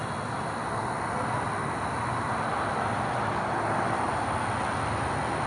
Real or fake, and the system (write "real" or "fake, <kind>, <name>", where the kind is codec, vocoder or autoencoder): real